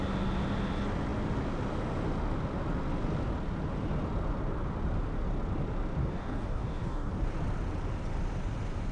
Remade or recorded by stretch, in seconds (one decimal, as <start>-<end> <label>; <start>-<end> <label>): 0.0-6.0 recorded; 6.0-7.1 remade; 7.1-8.9 recorded